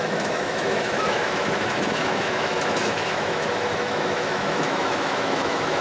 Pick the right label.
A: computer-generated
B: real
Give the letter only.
A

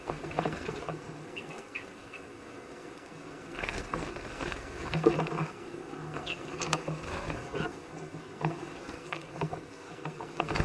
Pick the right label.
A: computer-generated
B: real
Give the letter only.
A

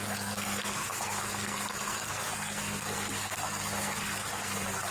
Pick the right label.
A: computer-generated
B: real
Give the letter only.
A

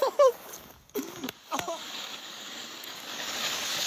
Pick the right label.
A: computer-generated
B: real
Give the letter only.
A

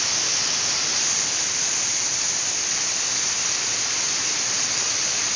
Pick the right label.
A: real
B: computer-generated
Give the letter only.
A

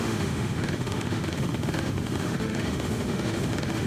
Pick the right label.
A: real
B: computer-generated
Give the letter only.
B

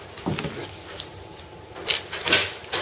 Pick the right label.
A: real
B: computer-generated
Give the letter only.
A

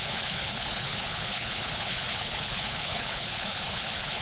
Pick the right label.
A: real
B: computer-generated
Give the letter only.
B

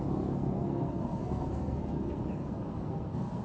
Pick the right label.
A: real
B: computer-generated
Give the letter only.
B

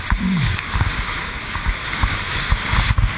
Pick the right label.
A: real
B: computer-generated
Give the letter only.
B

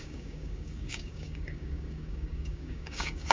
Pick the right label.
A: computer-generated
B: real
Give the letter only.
A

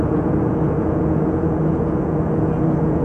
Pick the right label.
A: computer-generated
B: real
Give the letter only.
A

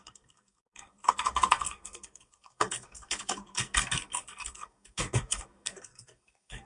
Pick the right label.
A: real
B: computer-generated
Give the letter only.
B